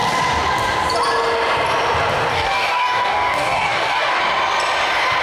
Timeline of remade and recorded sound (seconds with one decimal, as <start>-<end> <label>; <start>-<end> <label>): 0.0-2.3 recorded; 2.3-4.2 remade; 4.2-5.2 recorded